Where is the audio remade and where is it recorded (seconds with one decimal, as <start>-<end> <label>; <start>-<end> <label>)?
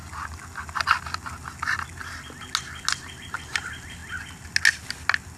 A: 0.0-5.4 recorded